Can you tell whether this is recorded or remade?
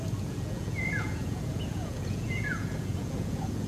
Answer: remade